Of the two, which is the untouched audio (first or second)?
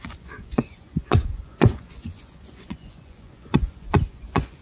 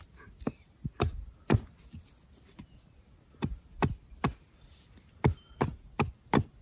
second